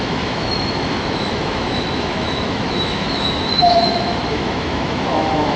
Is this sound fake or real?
fake